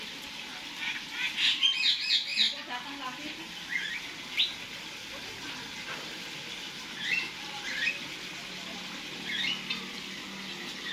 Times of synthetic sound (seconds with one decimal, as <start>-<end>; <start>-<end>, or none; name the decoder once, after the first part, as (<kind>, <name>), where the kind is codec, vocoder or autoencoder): none